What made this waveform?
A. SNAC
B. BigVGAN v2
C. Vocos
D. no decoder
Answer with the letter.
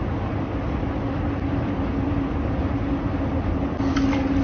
D